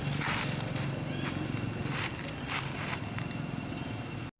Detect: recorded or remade recorded